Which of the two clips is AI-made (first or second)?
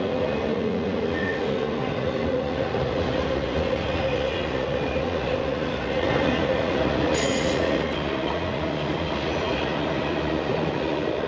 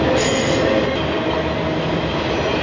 first